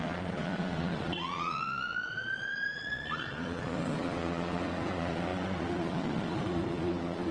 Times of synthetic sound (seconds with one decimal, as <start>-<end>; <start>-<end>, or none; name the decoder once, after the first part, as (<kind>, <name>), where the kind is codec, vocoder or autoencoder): 0.0-7.3 (vocoder, Vocos)